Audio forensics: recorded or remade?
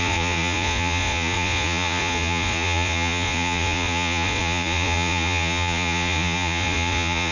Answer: remade